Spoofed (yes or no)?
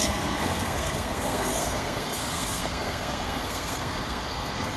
yes